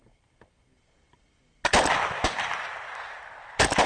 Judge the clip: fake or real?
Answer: real